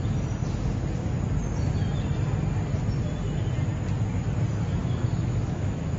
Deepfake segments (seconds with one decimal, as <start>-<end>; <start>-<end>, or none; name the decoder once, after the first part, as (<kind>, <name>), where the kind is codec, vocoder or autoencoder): 4.8-6.0 (autoencoder, DAC-VAE)